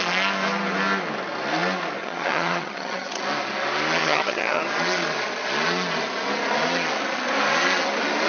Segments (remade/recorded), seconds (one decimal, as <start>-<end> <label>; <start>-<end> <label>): 0.0-2.0 recorded; 2.0-3.2 remade; 3.2-4.0 recorded; 4.0-4.6 remade; 4.6-8.3 recorded